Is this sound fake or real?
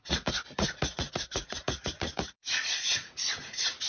fake